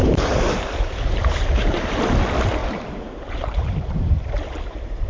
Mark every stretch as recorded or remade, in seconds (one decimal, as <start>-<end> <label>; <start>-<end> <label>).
0.0-2.0 remade; 2.0-2.6 recorded; 2.6-5.1 remade